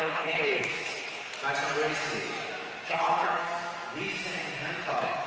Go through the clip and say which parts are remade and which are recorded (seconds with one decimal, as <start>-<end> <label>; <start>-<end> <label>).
0.0-1.3 remade; 1.3-2.9 recorded; 2.9-3.4 remade; 3.4-4.8 recorded; 4.8-5.3 remade